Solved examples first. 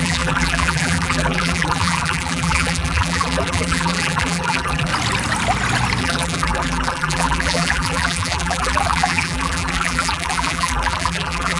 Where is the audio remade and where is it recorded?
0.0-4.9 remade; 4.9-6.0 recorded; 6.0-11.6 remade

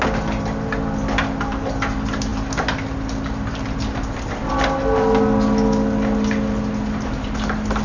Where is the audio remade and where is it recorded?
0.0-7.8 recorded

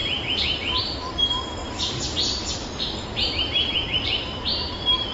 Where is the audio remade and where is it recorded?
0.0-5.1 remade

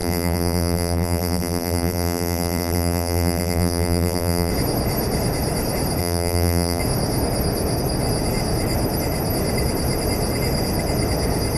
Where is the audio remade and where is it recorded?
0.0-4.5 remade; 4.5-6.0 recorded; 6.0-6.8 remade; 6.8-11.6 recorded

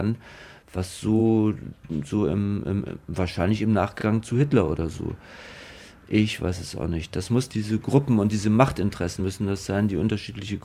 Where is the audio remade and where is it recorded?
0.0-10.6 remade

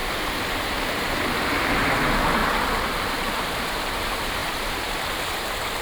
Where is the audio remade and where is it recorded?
0.0-0.6 recorded; 0.6-2.4 remade; 2.4-3.1 recorded; 3.1-5.8 remade

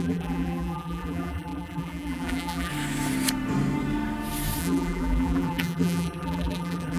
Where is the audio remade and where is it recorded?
0.0-2.7 remade; 2.7-4.6 recorded; 4.6-7.0 remade